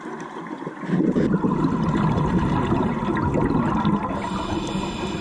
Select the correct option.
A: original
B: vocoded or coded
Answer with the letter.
A